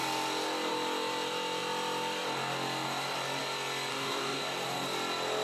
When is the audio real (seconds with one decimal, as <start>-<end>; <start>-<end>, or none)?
0.0-3.9; 4.4-5.4